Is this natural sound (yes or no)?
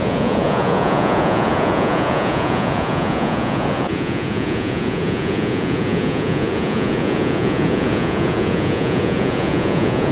no